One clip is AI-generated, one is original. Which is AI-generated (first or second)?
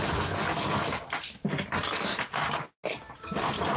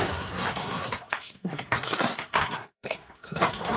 second